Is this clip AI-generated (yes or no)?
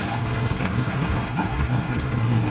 yes